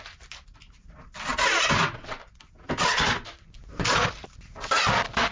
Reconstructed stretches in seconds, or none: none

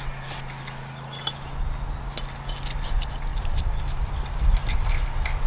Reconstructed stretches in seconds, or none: 3.3-4.1 (vocoder, BigVGAN v2)

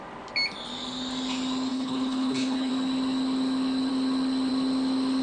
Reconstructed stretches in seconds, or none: 1.7-2.7 (codec, HILCodec)

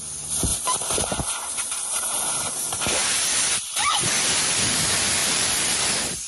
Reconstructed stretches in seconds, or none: 0.5-1.3 (vocoder, BigVGAN v2); 3.0-3.9; 5.2-6.3

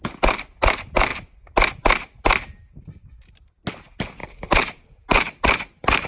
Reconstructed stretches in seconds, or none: 4.2-6.1 (vocoder, BigVGAN v2)

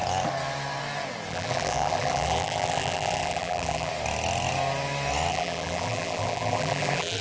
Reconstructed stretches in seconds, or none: 1.3-3.9 (vocoder, BigVGAN v2); 5.3-7.2

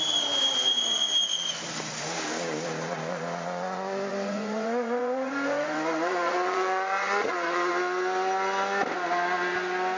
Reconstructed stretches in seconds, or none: 4.1-7.7 (vocoder, Vocos)